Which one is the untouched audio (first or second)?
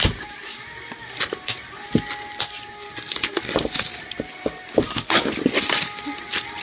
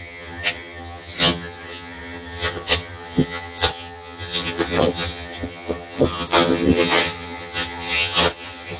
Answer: first